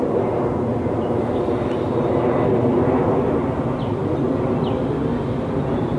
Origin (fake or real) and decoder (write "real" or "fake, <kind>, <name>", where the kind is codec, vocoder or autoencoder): real